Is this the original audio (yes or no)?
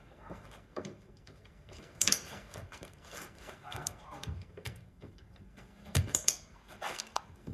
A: no